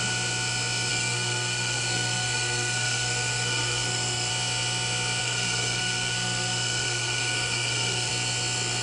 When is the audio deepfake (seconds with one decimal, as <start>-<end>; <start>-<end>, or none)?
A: 0.9-4.3; 5.2-8.1